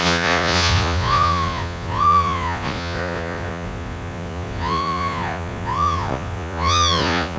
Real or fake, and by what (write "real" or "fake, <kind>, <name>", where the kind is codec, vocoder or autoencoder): fake, vocoder, Vocos